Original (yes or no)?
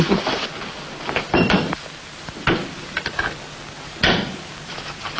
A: yes